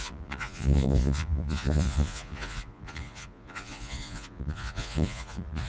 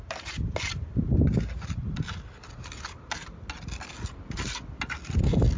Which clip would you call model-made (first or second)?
first